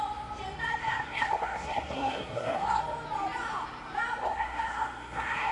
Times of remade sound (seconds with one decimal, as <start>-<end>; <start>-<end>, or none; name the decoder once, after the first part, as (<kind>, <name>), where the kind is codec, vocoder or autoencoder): 0.8-2.8 (codec, SNAC); 4.2-5.5